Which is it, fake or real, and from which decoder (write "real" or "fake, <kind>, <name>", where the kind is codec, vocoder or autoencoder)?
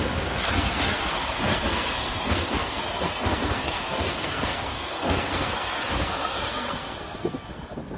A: fake, codec, SNAC